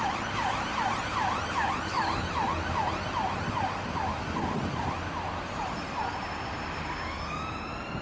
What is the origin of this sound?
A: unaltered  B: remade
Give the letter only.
A